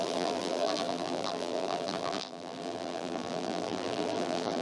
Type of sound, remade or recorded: remade